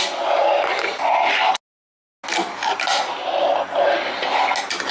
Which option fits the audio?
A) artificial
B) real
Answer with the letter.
B